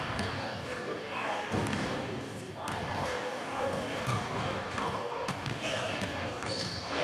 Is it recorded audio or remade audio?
remade